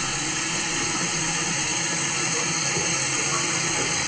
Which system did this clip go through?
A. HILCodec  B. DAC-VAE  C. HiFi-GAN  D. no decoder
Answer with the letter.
D